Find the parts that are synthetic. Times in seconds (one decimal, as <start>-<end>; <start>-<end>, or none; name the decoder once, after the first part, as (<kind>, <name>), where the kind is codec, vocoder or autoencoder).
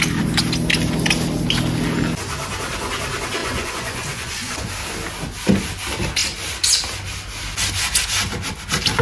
3.4-4.7 (vocoder, Vocos)